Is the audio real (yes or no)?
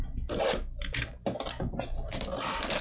yes